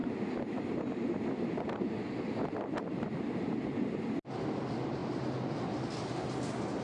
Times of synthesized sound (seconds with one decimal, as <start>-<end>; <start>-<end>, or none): none